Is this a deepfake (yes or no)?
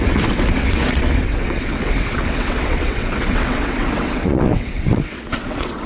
yes